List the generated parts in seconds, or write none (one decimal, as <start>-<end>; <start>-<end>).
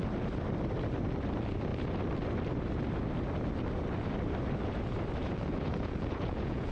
5.2-6.7